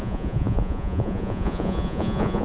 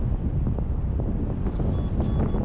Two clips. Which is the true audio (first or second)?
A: second